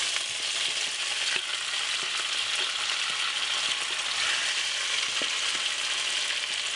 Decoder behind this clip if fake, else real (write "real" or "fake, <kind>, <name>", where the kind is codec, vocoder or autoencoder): real